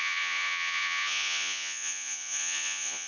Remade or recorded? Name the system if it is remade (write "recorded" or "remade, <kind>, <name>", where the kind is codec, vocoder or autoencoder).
remade, vocoder, Vocos